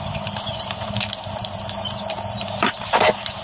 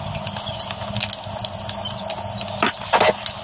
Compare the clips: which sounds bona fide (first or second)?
second